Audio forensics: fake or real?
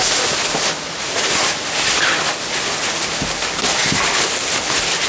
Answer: real